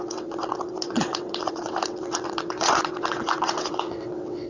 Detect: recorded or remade remade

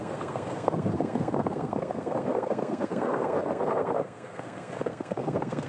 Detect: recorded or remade remade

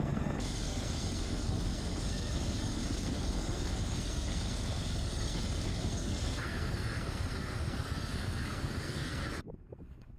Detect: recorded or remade remade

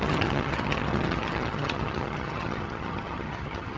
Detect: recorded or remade remade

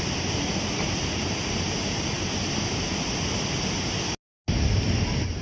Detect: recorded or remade recorded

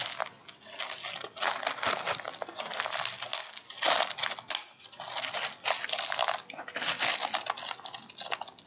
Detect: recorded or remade recorded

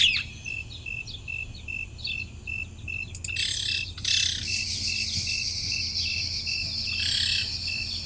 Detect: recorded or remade recorded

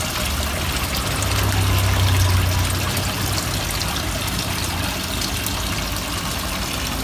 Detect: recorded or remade recorded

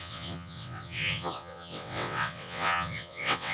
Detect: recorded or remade remade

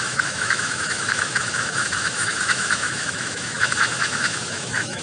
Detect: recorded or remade remade